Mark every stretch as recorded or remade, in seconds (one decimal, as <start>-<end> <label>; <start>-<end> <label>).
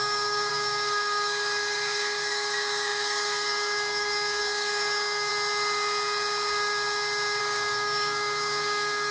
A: 0.0-5.3 remade; 5.3-7.4 recorded; 7.4-9.1 remade